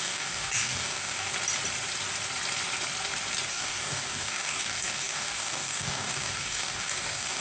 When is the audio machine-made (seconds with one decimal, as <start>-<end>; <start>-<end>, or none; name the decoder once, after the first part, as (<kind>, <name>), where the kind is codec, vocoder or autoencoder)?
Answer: 0.0-1.3 (codec, DAC); 3.5-7.4